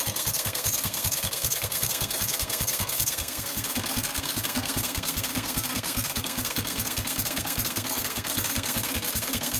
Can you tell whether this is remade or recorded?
remade